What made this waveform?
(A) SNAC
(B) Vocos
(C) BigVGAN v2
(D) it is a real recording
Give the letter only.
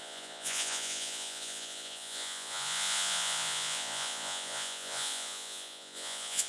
B